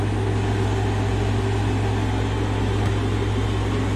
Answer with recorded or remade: recorded